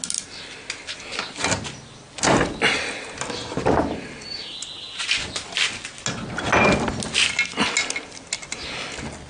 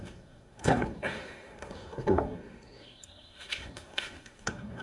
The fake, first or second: second